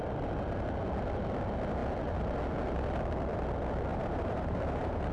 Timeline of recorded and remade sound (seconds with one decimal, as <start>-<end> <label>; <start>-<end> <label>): 0.0-3.9 recorded; 3.9-5.1 remade